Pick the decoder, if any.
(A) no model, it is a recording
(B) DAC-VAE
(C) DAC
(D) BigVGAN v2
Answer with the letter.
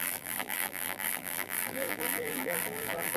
D